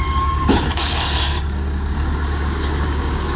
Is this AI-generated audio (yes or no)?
yes